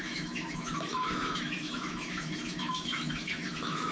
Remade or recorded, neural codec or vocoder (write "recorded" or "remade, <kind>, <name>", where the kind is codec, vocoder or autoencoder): remade, autoencoder, DAC-VAE